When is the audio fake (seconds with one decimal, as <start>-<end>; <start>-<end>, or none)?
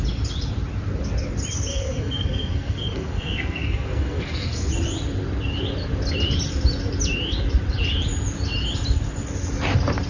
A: 1.7-4.7